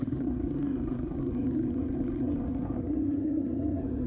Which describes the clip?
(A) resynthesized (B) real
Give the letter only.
A